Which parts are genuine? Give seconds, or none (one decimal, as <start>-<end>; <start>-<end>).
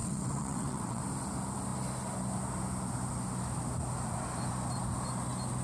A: 1.0-5.6